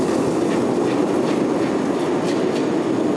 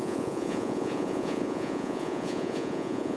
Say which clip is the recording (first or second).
first